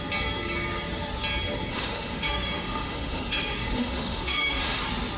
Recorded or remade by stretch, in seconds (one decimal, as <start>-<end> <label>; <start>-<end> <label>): 0.0-1.7 recorded; 1.7-4.8 remade; 4.8-5.2 recorded